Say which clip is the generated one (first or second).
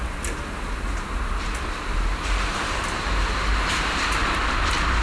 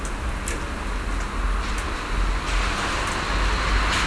first